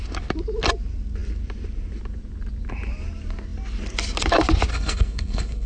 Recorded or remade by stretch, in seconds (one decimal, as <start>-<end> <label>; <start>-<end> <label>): 0.0-4.7 recorded; 4.7-5.7 remade

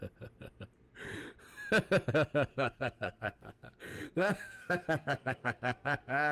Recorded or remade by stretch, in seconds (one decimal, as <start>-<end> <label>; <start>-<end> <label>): 0.0-2.5 recorded; 2.5-6.3 remade

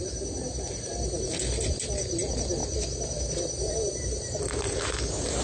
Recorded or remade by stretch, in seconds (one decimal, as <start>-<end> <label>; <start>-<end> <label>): 0.0-5.4 recorded

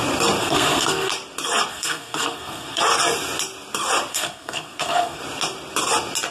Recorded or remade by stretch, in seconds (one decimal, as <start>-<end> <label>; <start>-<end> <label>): 0.0-0.4 recorded; 0.4-1.1 remade; 1.1-1.7 recorded; 1.7-2.8 remade; 2.8-4.1 recorded; 4.1-5.2 remade; 5.2-6.3 recorded

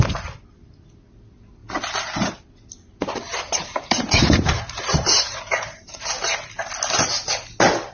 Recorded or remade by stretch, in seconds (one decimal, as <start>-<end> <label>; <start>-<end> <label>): 0.0-3.7 recorded; 3.7-6.1 remade; 6.1-7.9 recorded

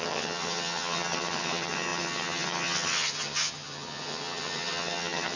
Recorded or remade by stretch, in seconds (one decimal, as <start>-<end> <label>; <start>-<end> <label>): 0.0-5.4 remade

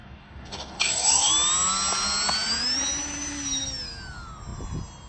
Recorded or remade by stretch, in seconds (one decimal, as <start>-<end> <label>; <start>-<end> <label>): 0.0-1.3 remade; 1.3-5.1 recorded